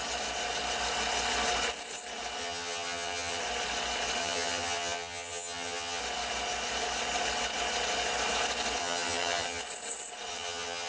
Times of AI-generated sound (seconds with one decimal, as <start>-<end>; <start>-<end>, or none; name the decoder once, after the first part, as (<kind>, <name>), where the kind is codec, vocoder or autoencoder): 2.4-3.4 (vocoder, HiFi-GAN); 4.2-6.0; 8.8-9.6; 10.3-10.9